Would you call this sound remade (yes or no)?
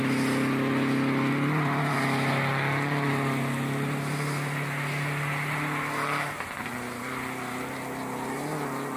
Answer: no